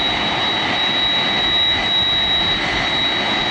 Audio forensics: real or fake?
real